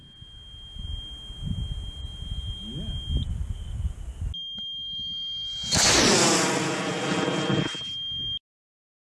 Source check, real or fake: real